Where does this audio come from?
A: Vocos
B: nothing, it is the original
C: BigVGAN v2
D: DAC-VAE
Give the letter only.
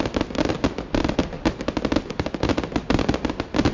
B